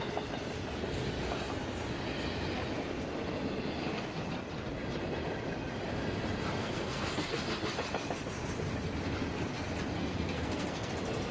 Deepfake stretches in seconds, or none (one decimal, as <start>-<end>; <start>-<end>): 6.6-7.4; 10.0-10.9